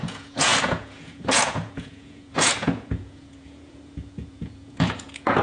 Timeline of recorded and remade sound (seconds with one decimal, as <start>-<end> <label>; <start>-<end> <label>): 0.0-5.4 remade

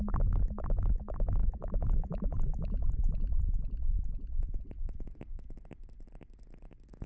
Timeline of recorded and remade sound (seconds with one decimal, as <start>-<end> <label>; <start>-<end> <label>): 0.0-1.4 recorded; 1.4-4.6 remade; 4.6-7.1 recorded

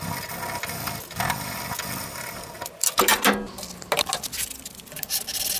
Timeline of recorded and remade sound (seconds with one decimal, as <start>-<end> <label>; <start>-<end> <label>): 0.0-5.6 recorded